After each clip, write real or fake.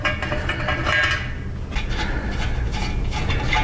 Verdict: real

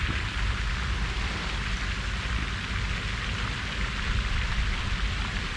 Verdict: real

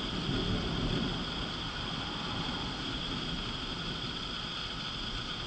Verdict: real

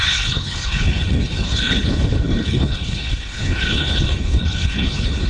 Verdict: fake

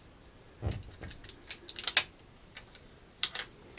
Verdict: real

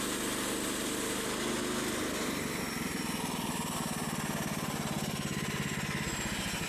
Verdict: real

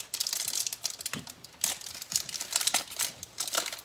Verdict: real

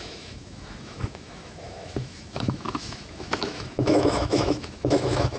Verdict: fake